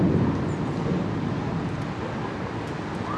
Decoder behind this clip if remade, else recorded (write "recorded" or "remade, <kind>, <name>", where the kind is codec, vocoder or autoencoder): recorded